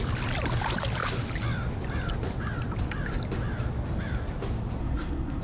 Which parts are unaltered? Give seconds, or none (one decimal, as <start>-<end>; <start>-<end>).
0.0-4.8